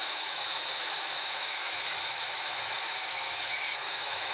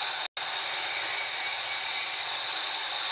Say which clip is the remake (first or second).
first